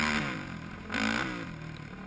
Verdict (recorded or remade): recorded